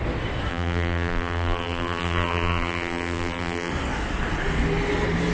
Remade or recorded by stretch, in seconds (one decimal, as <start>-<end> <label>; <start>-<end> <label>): 0.0-0.5 recorded; 0.5-3.7 remade; 3.7-5.3 recorded